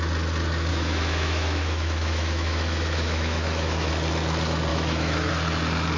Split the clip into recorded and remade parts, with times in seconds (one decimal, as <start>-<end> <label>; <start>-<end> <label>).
0.0-0.7 recorded; 0.7-3.9 remade; 3.9-4.7 recorded; 4.7-5.3 remade; 5.3-6.0 recorded